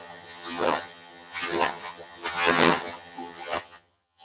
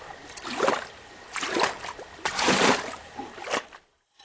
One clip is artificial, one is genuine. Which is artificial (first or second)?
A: first